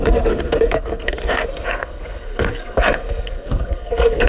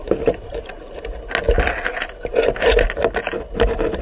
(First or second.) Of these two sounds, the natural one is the second